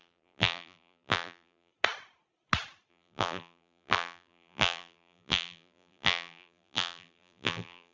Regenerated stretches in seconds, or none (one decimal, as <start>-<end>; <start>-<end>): 0.0-1.7; 2.9-7.9